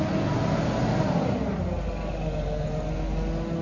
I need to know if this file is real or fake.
real